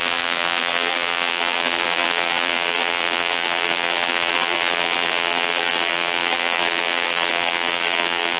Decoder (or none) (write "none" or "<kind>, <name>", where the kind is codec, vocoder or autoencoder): vocoder, BigVGAN v2